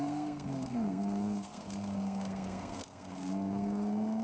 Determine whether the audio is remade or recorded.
remade